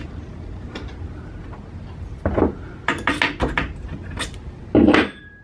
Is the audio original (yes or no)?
yes